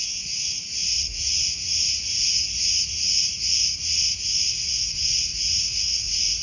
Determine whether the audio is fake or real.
fake